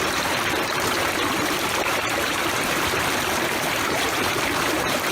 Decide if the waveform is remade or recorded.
remade